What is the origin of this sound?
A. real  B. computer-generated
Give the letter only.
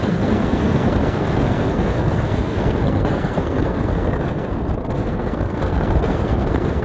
B